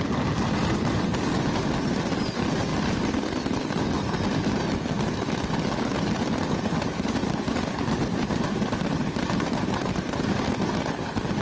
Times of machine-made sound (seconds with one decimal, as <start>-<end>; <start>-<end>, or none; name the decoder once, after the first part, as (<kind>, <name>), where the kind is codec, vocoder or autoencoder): none